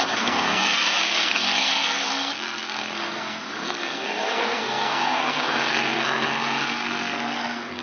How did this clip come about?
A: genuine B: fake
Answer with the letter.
B